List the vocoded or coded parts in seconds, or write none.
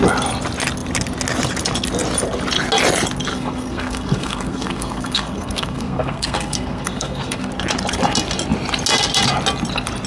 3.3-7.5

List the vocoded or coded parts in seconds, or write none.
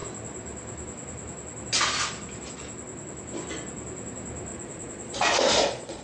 4.5-6.0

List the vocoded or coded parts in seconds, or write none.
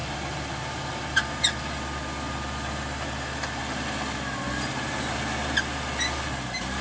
none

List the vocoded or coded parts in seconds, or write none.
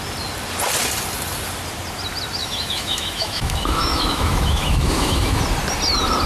2.4-5.4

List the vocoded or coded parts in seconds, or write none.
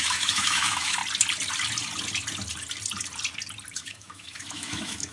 0.0-1.0; 3.7-5.1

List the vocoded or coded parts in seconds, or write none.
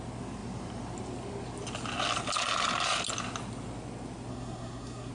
4.3-5.1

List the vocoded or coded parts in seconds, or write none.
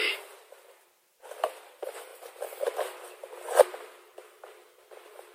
none